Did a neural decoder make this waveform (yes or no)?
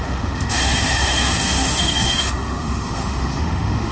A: yes